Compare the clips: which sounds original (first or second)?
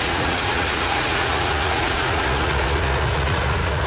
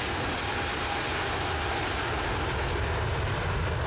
second